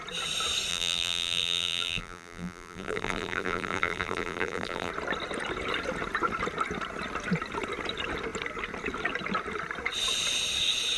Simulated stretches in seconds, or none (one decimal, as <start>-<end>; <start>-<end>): 0.7-4.9